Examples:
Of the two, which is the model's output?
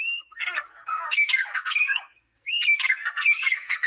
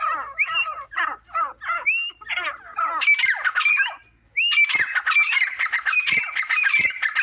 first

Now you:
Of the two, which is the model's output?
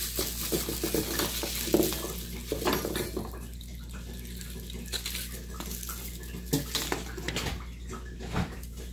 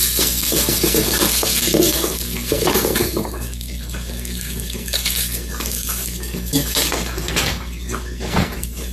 second